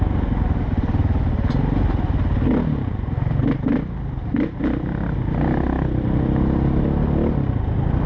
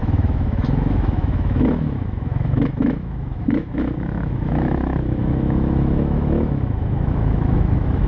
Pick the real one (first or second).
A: first